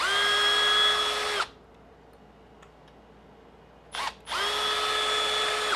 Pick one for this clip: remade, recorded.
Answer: recorded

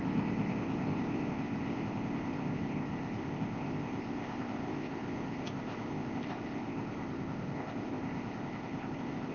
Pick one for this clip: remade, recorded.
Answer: remade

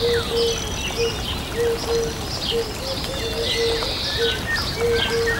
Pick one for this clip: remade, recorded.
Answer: recorded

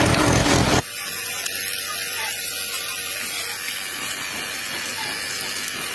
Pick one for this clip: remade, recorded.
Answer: recorded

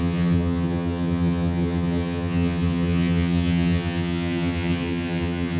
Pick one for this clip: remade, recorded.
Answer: remade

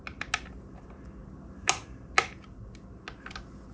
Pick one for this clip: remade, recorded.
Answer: recorded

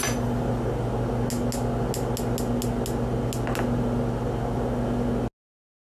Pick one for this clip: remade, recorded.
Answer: recorded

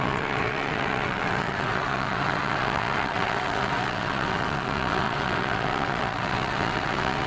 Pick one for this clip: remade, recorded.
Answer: remade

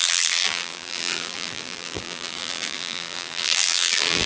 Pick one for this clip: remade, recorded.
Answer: remade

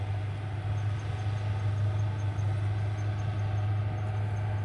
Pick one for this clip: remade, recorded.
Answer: recorded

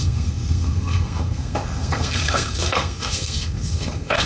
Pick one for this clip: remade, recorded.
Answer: remade